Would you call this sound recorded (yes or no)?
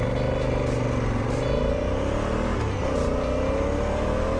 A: yes